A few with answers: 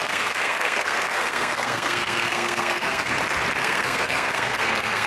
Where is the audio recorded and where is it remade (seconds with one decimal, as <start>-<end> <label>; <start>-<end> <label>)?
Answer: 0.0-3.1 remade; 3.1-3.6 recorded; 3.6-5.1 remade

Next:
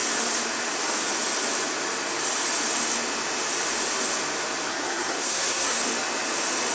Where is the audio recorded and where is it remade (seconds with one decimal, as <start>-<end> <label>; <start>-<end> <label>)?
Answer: 0.0-4.7 recorded; 4.7-5.8 remade; 5.8-6.7 recorded

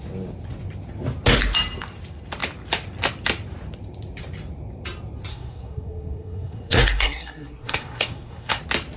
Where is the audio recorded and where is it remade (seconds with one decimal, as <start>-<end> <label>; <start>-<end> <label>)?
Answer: 0.0-5.3 recorded; 5.3-8.6 remade; 8.6-9.0 recorded